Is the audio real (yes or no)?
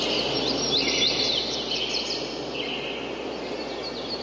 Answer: yes